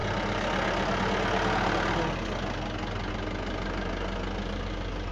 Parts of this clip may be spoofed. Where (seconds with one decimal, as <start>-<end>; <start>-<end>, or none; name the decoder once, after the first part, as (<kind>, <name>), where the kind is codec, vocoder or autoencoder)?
none